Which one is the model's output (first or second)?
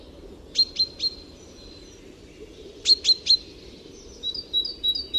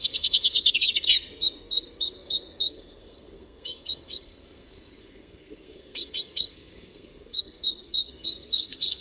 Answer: second